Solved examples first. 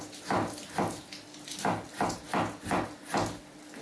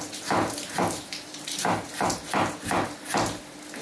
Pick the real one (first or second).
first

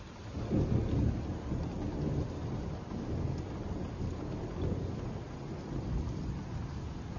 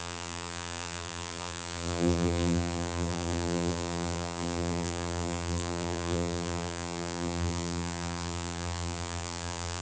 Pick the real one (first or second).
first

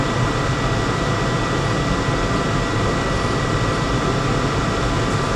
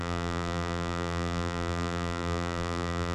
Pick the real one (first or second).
first